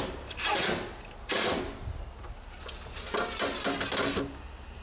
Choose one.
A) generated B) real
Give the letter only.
B